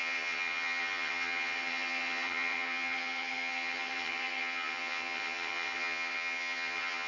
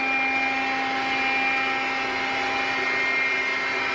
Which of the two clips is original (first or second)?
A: second